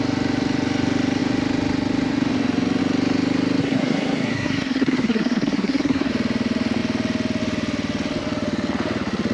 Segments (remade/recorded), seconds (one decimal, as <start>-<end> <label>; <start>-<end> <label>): 0.0-3.6 recorded; 3.6-6.1 remade; 6.1-9.3 recorded